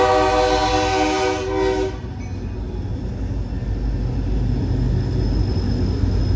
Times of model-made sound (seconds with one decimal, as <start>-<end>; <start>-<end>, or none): none